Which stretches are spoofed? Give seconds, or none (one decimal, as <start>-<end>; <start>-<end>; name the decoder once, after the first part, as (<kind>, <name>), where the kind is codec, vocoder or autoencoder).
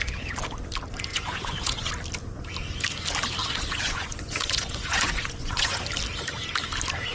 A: 1.1-1.9 (vocoder, Vocos); 3.4-5.8